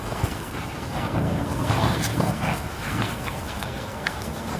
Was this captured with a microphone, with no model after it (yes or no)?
no